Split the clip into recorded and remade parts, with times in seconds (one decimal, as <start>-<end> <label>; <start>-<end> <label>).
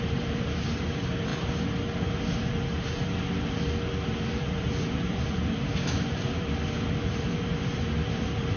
0.0-3.0 remade; 3.0-4.1 recorded; 4.1-8.6 remade